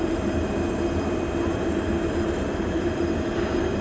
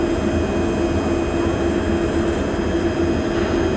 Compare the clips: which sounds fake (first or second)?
first